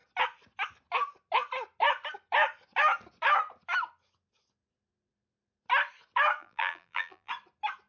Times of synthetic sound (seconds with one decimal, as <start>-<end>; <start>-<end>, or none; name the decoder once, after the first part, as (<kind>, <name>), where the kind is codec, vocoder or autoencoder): 6.4-7.3 (vocoder, BigVGAN v2)